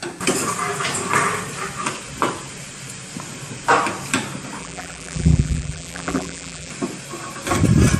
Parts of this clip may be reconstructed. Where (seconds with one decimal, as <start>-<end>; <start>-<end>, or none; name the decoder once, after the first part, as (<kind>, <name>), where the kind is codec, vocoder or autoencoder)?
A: 4.6-6.7 (vocoder, BigVGAN v2)